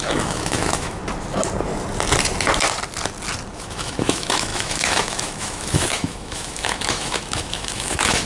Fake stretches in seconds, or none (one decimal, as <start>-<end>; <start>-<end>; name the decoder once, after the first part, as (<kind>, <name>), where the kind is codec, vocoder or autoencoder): 0.0-1.0 (autoencoder, DAC-VAE); 3.5-8.3

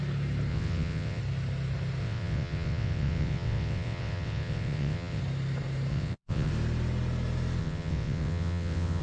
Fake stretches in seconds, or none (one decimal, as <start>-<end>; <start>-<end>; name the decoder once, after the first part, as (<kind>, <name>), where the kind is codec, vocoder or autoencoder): 0.5-1.2 (vocoder, WaveNeXt); 2.0-5.2; 5.9-6.5; 7.6-9.0

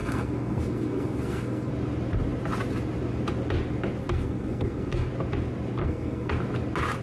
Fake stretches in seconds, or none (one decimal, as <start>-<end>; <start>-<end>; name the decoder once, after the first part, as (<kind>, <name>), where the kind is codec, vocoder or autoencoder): 0.0-1.7 (codec, SNAC); 4.0-5.1; 5.8-6.3

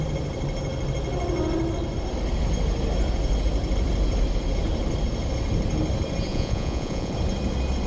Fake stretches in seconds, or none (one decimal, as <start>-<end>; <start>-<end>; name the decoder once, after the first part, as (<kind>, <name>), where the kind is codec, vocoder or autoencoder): 6.3-7.1 (vocoder, Vocos)